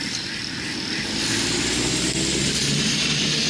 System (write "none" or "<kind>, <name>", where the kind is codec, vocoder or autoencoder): none